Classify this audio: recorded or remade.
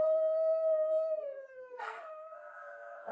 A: remade